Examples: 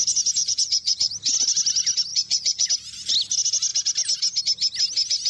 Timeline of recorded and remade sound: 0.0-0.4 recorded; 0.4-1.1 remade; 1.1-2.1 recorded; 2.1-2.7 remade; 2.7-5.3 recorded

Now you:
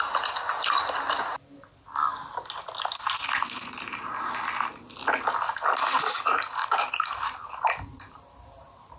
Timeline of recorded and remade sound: 0.0-6.6 recorded; 6.6-9.0 remade

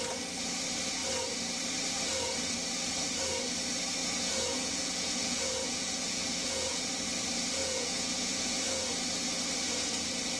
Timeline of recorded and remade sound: 0.0-4.0 recorded; 4.0-6.9 remade; 6.9-7.6 recorded; 7.6-8.9 remade; 8.9-10.4 recorded

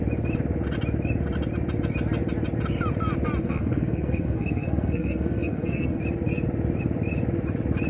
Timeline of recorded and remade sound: 0.0-3.4 recorded; 3.4-6.0 remade; 6.0-7.9 recorded

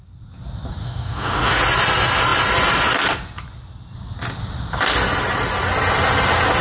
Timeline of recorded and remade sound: 0.0-0.8 recorded; 0.8-1.6 remade; 1.6-6.6 recorded

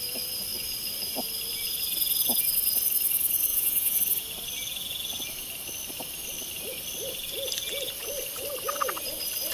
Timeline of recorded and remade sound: 0.0-3.5 recorded; 3.5-4.0 remade; 4.0-9.5 recorded